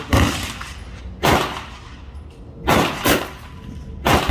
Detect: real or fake real